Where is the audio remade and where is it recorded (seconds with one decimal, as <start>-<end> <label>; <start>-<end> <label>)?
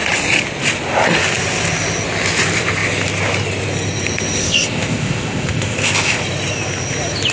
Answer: 0.0-4.4 recorded; 4.4-6.2 remade; 6.2-7.3 recorded